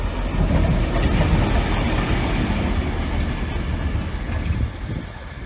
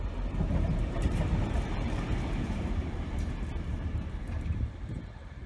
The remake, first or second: second